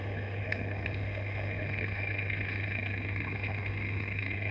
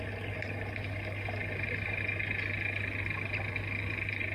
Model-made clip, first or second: first